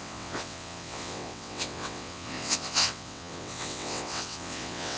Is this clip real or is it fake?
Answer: fake